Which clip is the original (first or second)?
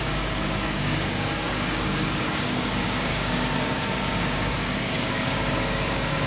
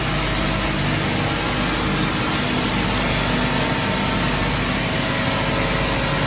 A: second